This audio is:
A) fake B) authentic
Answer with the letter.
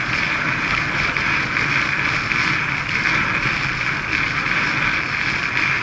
B